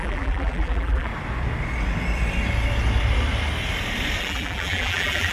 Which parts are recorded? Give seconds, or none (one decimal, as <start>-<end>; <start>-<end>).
1.1-4.2